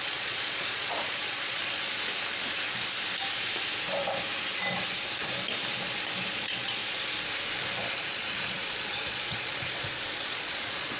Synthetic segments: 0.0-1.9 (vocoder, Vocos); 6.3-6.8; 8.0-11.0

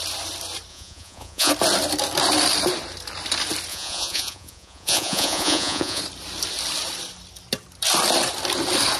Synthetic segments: 0.7-1.5 (vocoder, Vocos); 3.7-6.0

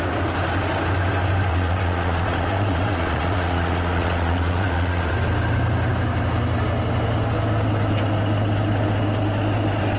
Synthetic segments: 1.5-5.1 (vocoder, Vocos)

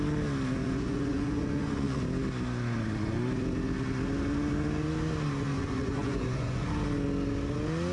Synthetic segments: 0.6-2.0 (vocoder, Vocos); 5.5-6.7

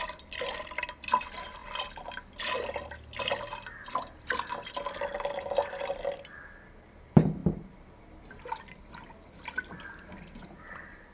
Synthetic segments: none